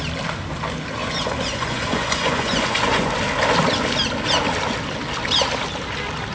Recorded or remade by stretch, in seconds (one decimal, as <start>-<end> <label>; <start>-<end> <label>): 0.0-1.0 recorded; 1.0-3.1 remade; 3.1-6.3 recorded